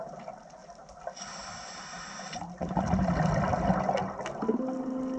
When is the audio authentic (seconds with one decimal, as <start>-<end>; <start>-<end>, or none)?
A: 0.0-5.2